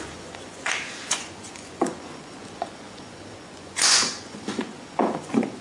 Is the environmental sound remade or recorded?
remade